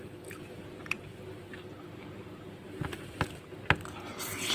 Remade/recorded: recorded